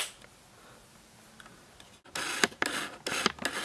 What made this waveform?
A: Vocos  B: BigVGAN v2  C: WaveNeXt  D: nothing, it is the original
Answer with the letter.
D